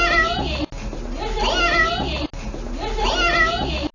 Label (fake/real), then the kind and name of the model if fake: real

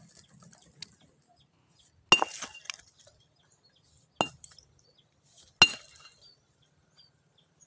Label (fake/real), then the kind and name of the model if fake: real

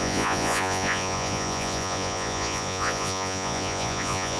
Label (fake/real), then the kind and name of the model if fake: fake, vocoder, Vocos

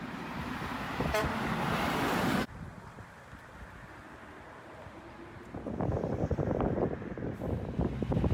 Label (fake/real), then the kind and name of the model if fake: real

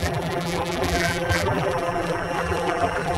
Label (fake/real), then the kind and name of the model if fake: fake, vocoder, BigVGAN v2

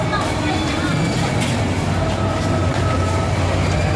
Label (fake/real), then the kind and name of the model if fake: real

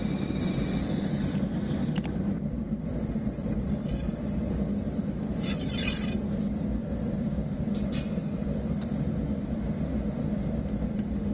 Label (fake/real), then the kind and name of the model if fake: real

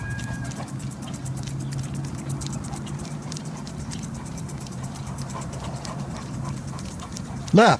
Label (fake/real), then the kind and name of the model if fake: fake, vocoder, BigVGAN v2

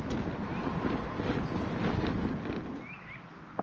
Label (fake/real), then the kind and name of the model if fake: real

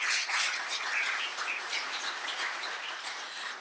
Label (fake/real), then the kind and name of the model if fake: fake, vocoder, Vocos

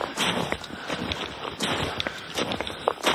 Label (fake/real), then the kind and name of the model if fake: real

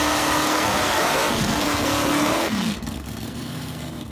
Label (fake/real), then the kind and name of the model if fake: fake, codec, SNAC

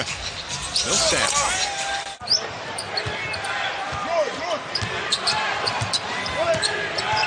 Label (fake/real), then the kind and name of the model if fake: real